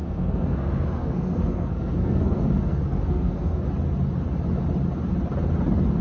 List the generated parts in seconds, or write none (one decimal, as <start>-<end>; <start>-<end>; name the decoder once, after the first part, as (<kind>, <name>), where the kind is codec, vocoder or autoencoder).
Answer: 0.0-3.6 (codec, SNAC)